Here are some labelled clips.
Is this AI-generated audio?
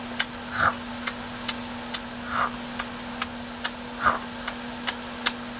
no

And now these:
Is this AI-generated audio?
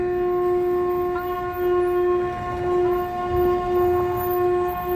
no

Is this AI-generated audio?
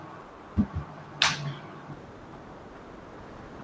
no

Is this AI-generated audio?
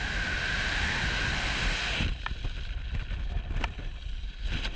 no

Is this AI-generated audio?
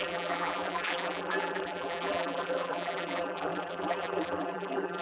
yes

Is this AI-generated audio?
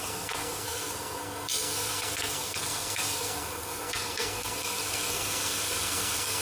yes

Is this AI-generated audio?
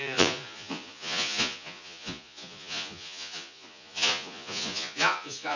yes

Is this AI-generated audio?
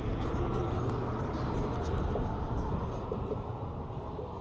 no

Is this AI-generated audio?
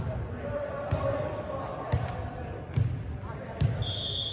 no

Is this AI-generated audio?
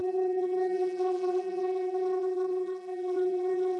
yes